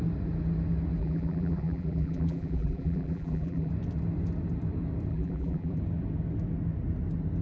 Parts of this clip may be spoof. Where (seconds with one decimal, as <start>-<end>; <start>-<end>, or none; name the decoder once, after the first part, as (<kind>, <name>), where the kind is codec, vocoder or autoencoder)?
1.0-3.7 (vocoder, BigVGAN v2); 5.1-5.8